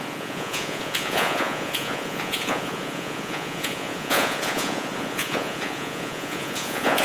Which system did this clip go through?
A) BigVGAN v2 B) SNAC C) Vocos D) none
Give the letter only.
C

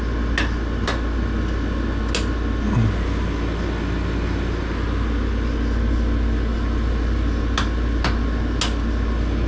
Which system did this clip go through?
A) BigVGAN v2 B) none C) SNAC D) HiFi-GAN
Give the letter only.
B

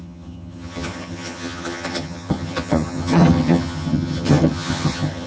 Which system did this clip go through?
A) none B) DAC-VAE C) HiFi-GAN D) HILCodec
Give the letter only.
C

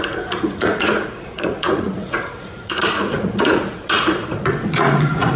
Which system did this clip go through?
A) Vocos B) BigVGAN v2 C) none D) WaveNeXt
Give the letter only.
A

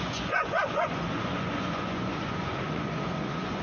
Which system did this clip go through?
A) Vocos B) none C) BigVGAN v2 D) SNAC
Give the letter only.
A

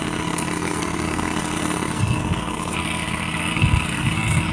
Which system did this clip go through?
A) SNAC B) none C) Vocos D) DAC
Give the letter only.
A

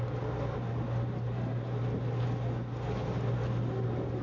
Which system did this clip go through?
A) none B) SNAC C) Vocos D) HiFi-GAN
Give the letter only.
A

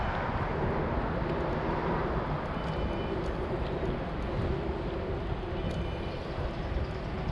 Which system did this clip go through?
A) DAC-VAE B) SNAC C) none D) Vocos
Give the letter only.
C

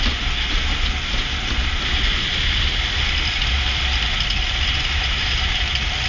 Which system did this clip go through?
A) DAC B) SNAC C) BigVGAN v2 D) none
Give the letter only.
D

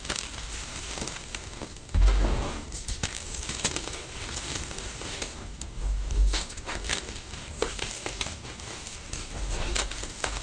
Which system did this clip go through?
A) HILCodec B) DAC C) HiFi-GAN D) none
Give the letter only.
B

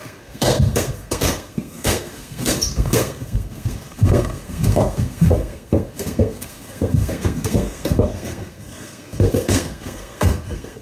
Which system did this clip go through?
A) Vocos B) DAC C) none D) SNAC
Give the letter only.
D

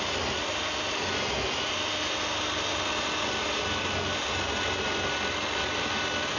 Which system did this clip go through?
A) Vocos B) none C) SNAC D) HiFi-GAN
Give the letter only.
B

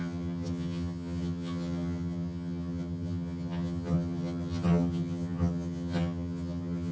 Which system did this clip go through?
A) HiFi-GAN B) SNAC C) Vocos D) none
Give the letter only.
A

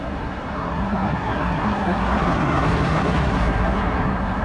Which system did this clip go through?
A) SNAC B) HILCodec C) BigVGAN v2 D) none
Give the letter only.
A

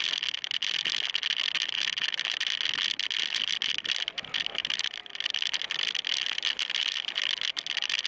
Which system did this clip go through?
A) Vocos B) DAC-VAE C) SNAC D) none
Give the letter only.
D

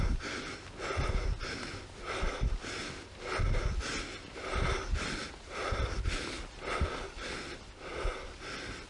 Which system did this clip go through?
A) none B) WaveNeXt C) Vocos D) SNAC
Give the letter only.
A